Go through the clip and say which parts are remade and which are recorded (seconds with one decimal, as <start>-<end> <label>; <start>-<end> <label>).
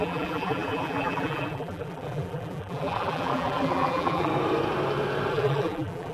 0.0-4.3 remade; 4.3-5.3 recorded; 5.3-6.1 remade